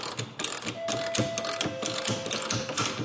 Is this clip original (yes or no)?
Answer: yes